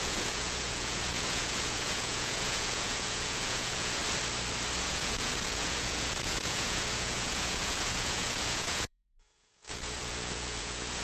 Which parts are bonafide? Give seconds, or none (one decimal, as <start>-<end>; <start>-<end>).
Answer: 4.0-4.8